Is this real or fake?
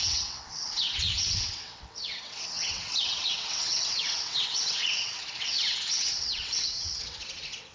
fake